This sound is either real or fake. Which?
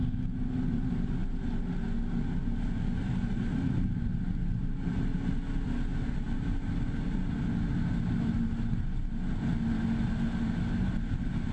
real